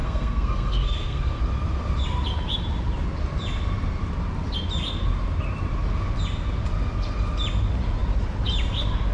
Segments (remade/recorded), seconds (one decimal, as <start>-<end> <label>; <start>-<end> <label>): 0.0-1.4 remade; 1.4-9.1 recorded